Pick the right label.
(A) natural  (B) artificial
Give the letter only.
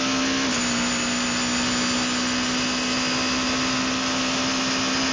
A